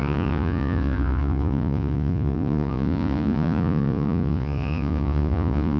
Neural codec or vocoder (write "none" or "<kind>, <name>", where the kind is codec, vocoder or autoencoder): vocoder, Vocos